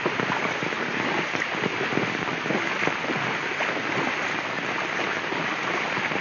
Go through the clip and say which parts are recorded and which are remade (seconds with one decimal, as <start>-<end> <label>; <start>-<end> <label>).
0.0-6.2 recorded

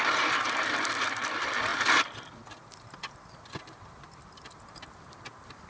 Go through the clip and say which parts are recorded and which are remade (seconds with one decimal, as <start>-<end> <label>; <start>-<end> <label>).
0.0-5.7 recorded